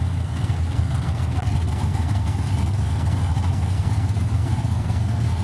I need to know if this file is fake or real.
fake